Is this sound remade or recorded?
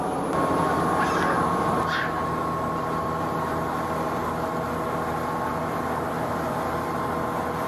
recorded